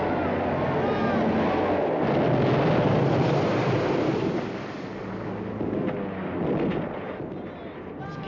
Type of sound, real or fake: real